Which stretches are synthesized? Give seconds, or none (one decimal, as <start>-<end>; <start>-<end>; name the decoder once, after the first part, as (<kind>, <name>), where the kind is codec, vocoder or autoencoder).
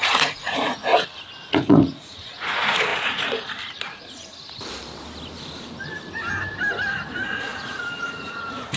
0.0-0.9 (vocoder, Vocos); 1.4-4.2; 7.1-8.8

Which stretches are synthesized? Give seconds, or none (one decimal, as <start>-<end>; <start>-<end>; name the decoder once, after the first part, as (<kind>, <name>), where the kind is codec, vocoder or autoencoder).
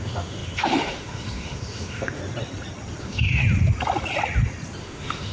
0.0-2.2 (autoencoder, DAC-VAE); 3.0-3.4; 4.8-5.3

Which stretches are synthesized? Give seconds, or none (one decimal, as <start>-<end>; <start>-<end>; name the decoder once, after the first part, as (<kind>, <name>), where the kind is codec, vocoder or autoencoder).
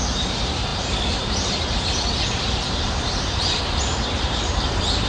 0.0-5.1 (vocoder, BigVGAN v2)